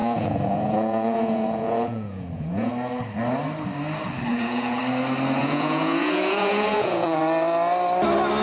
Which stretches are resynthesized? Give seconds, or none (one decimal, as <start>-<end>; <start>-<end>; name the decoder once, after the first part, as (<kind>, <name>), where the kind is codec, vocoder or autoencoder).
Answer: 0.0-2.7 (vocoder, Vocos); 4.3-4.8; 5.4-7.2